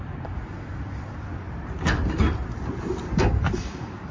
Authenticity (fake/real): real